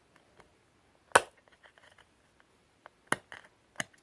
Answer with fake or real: real